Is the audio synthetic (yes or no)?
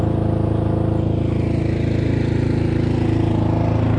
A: no